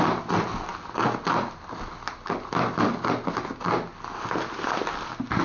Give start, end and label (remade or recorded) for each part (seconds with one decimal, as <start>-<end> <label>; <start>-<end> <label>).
0.0-5.4 recorded